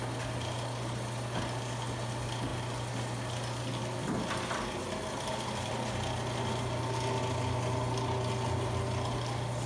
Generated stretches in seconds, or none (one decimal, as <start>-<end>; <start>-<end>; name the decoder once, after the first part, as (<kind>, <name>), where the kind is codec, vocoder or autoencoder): none